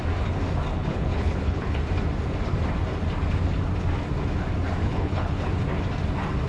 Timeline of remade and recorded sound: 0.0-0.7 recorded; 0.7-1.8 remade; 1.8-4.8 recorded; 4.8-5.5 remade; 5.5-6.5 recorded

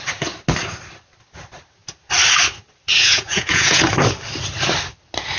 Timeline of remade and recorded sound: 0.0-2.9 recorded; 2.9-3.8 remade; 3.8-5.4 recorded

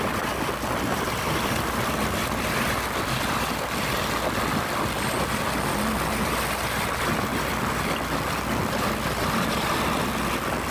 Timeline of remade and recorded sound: 0.0-10.7 recorded